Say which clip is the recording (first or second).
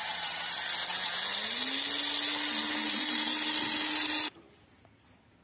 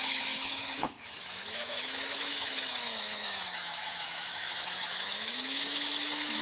first